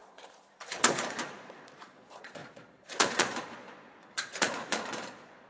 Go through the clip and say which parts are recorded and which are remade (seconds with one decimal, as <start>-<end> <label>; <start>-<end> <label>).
0.0-5.5 remade